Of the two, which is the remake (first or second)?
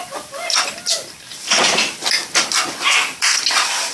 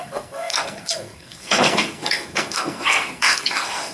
second